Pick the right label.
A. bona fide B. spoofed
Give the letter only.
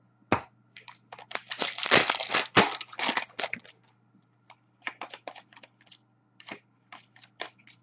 A